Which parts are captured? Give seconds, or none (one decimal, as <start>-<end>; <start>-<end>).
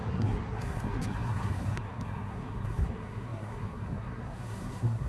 none